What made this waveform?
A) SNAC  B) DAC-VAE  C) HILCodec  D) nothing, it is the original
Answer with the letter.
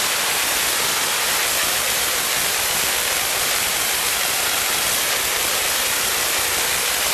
D